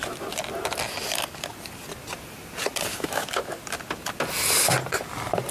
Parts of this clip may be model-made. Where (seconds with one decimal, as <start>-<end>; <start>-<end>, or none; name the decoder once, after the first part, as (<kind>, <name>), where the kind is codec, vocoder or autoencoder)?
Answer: 2.9-3.4 (autoencoder, DAC-VAE)